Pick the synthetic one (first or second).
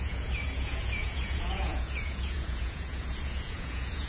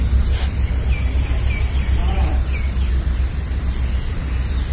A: first